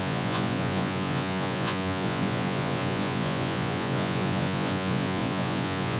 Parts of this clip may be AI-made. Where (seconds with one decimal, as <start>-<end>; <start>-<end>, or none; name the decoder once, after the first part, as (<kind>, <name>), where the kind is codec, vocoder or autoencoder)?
0.0-6.0 (vocoder, Vocos)